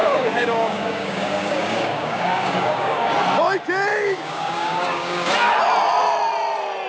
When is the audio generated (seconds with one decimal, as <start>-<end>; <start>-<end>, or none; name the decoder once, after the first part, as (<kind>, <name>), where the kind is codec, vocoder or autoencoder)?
0.0-3.1 (codec, DAC); 3.9-5.3